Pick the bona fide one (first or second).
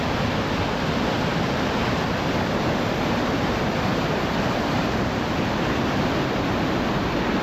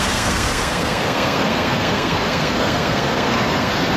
first